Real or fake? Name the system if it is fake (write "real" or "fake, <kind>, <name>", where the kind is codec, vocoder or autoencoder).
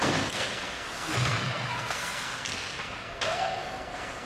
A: fake, codec, SNAC